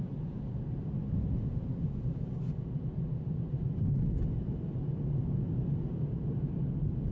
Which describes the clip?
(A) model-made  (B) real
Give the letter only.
B